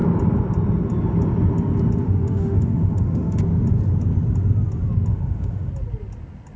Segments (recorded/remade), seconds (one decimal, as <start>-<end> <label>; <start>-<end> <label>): 0.0-2.0 recorded; 2.0-3.4 remade; 3.4-5.1 recorded; 5.1-5.7 remade; 5.7-6.6 recorded